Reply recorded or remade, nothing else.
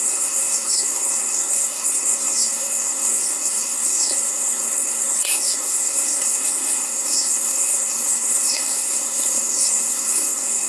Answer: remade